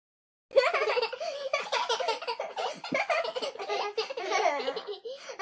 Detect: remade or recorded recorded